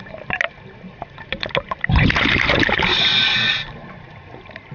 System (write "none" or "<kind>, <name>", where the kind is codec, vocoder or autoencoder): none